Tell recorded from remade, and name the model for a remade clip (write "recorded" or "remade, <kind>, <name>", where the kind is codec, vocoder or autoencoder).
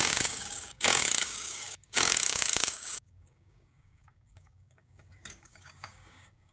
remade, codec, DAC